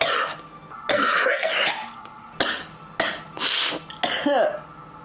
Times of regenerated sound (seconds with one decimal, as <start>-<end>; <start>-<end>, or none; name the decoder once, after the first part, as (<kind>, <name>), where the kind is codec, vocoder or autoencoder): 0.9-1.5 (codec, SNAC)

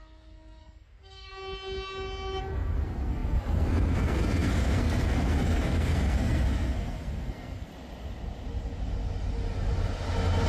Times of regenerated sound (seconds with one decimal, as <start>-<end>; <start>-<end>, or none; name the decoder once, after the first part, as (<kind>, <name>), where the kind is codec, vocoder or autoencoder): 0.0-1.3 (codec, SNAC); 2.4-7.7

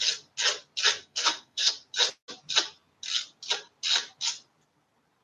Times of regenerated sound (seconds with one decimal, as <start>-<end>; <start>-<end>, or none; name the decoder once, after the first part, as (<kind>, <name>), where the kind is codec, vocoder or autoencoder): 1.0-1.7 (codec, SNAC)